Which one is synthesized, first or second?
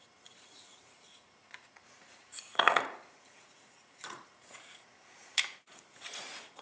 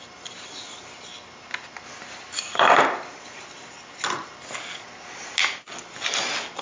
first